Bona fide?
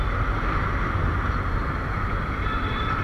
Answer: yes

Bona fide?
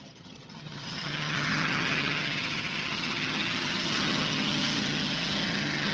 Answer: no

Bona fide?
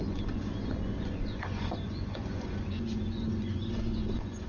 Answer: no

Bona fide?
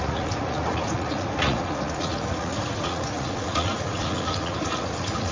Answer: no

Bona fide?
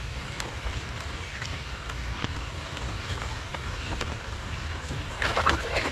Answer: no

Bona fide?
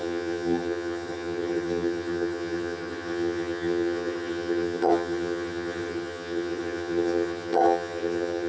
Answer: no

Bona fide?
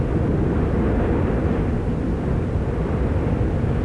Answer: yes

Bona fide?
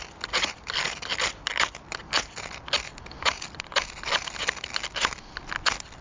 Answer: yes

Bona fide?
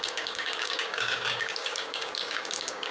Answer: no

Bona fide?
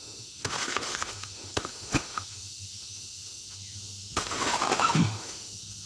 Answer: no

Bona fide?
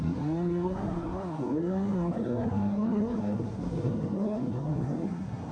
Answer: no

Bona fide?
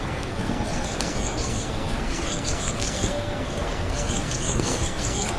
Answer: no